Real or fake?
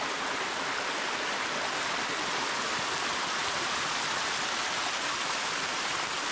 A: real